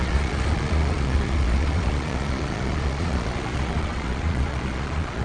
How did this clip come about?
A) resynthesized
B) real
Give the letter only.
A